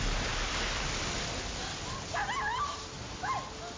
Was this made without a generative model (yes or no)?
yes